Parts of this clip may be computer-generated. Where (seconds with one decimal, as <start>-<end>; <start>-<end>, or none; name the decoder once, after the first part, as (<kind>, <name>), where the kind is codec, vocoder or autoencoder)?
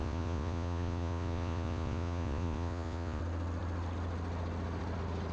0.0-3.2 (vocoder, Vocos)